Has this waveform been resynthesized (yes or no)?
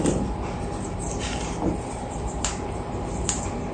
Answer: yes